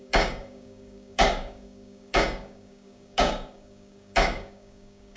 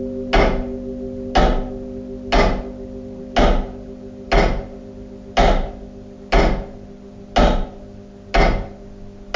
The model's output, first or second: first